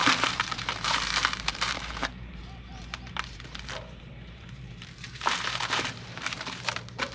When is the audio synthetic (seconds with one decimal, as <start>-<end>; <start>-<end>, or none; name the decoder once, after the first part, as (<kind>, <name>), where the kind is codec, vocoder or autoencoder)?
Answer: 0.0-7.1 (vocoder, BigVGAN v2)